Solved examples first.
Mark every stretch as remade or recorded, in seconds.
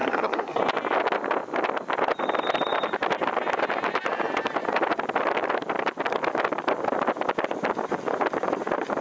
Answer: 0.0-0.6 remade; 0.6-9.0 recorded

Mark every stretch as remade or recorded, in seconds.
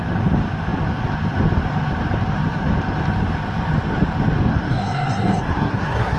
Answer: 0.0-4.5 recorded; 4.5-6.2 remade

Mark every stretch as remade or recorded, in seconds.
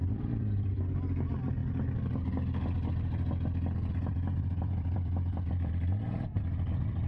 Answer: 0.0-1.6 remade; 1.6-3.9 recorded; 3.9-7.1 remade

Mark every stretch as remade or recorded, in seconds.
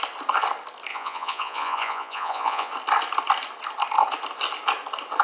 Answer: 0.0-0.9 recorded; 0.9-2.7 remade; 2.7-5.2 recorded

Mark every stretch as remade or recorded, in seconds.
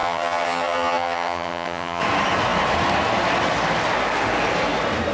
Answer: 0.0-2.0 remade; 2.0-5.1 recorded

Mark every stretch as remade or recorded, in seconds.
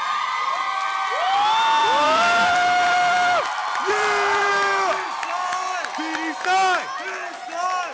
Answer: 0.0-1.8 recorded; 1.8-4.5 remade; 4.5-7.9 recorded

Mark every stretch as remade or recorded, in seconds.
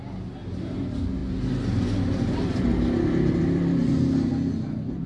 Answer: 0.0-5.1 recorded